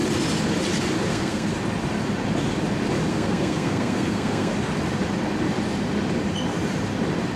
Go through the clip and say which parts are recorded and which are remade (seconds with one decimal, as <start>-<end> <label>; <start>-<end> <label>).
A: 0.0-1.1 recorded; 1.1-1.5 remade; 1.5-3.1 recorded; 3.1-4.5 remade; 4.5-7.4 recorded

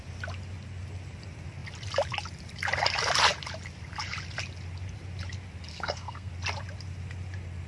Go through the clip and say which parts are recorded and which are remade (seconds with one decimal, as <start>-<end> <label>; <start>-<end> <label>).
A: 0.0-5.7 recorded; 5.7-6.3 remade; 6.3-7.7 recorded

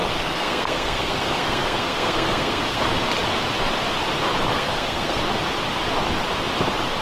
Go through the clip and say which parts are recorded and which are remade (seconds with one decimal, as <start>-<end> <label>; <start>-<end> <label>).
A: 0.0-2.8 remade; 2.8-4.5 recorded; 4.5-5.2 remade; 5.2-7.0 recorded

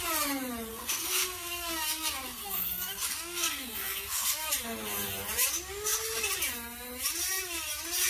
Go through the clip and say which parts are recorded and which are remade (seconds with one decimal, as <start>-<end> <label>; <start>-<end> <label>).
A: 0.0-0.7 recorded; 0.7-4.5 remade; 4.5-8.1 recorded